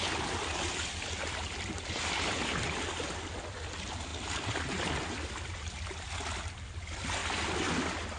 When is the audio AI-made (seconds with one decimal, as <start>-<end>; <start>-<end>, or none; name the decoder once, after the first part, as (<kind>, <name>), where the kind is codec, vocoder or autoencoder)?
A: none